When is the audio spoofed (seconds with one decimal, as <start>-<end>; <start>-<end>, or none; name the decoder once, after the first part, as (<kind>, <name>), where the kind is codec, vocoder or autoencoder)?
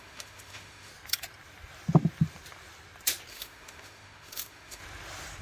0.0-0.9 (autoencoder, DAC-VAE); 3.3-4.8